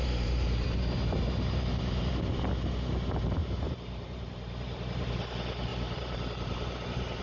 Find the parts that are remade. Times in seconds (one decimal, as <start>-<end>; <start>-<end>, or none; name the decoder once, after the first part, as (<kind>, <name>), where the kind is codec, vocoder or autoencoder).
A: 0.0-2.1 (vocoder, BigVGAN v2); 3.4-5.1; 5.7-7.2